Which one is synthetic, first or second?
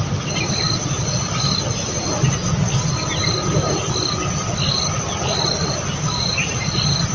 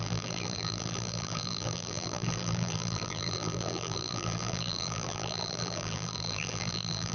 second